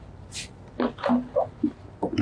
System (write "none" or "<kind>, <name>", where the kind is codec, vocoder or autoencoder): none